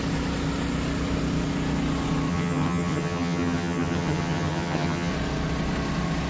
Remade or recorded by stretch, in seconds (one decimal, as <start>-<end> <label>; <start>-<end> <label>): 0.0-2.3 recorded; 2.3-5.1 remade; 5.1-6.3 recorded